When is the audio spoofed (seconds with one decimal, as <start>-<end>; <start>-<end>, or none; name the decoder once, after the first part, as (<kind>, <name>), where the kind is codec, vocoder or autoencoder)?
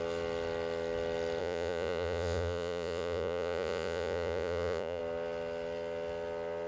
1.4-5.0 (vocoder, Vocos)